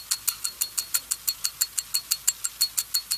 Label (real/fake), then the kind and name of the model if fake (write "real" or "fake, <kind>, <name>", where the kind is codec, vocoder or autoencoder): real